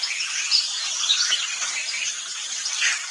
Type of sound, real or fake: real